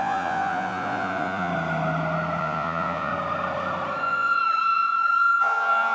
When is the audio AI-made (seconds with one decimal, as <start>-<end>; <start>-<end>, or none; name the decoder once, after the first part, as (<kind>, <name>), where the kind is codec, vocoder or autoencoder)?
0.0-1.5 (vocoder, Vocos); 2.4-3.1; 4.0-5.9

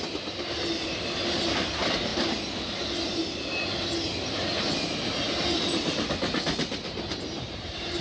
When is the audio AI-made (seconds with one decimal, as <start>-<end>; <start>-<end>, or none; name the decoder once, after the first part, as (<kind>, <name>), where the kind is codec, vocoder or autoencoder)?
none

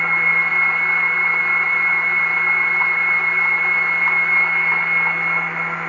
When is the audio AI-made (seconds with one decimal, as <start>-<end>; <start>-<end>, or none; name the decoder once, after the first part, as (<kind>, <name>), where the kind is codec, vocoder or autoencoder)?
none

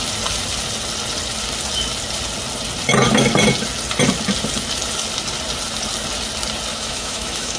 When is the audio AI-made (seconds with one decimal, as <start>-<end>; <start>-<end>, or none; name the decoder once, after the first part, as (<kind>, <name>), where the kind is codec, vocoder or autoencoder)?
6.7-7.6 (autoencoder, DAC-VAE)